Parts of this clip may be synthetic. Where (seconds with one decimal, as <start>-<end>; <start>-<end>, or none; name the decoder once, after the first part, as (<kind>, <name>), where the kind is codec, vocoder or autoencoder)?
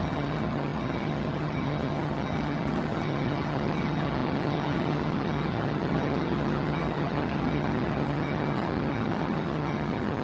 0.0-10.2 (vocoder, HiFi-GAN)